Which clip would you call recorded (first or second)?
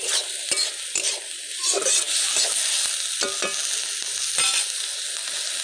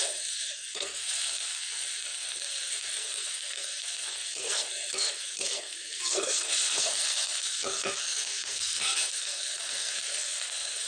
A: first